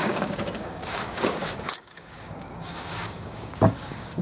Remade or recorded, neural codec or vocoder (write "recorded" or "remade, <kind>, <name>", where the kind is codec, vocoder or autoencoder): remade, codec, DAC